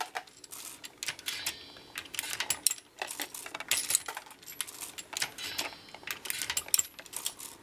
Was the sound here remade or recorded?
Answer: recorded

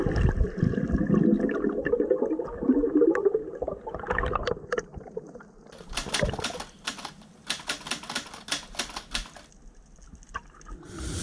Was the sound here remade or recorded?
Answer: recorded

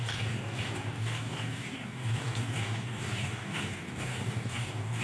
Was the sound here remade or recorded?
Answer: remade